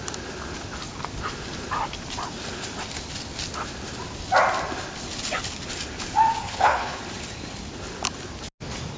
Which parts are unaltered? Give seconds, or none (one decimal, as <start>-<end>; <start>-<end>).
0.0-6.4; 7.0-9.0